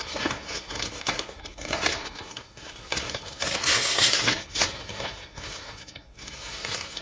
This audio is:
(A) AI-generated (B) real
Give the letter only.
A